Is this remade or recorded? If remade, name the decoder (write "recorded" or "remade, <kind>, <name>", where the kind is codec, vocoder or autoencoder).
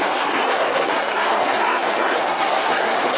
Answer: remade, codec, SNAC